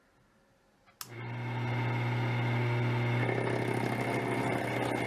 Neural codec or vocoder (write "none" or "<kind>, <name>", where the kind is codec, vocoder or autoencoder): none